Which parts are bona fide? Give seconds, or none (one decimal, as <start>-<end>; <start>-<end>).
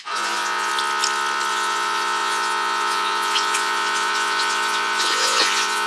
0.7-1.5